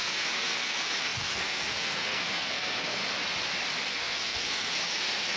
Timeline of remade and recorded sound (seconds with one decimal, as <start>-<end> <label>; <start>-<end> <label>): 0.0-3.0 remade; 3.0-3.9 recorded; 3.9-5.4 remade